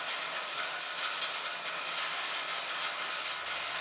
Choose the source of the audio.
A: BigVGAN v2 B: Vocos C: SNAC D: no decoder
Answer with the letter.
D